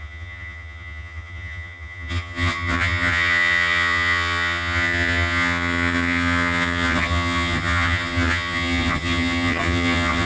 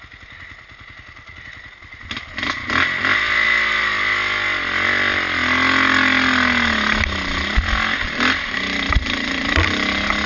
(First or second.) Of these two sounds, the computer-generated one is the first